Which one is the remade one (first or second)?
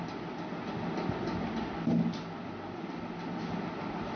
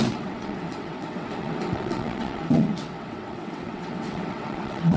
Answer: second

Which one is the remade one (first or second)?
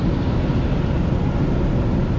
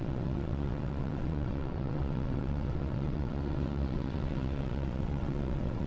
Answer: second